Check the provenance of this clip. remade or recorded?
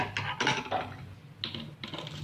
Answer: recorded